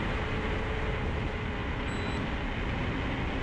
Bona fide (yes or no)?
yes